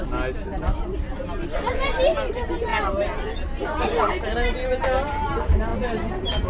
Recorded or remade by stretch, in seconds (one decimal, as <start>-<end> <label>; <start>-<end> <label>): 0.0-6.5 recorded